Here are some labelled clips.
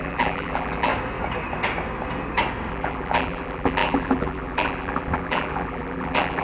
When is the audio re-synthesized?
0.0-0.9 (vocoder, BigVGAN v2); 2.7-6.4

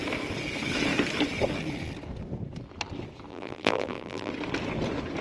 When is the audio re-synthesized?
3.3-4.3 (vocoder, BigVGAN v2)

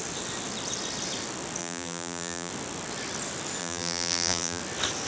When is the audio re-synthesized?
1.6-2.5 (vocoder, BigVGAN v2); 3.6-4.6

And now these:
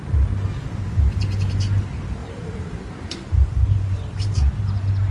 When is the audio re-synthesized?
2.2-4.6 (vocoder, BigVGAN v2)

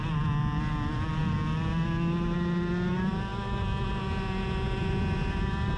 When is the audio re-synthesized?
none

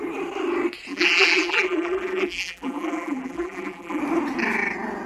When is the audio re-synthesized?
0.9-4.0 (vocoder, BigVGAN v2)

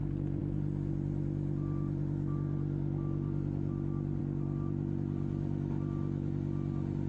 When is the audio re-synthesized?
none